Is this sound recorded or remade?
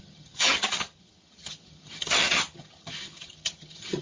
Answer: remade